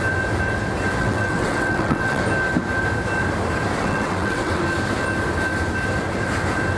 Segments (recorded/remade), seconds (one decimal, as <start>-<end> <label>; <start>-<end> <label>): 0.0-1.0 recorded; 1.0-2.2 remade; 2.2-3.8 recorded; 3.8-4.6 remade; 4.6-6.8 recorded